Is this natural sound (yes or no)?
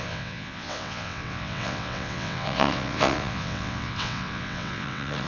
no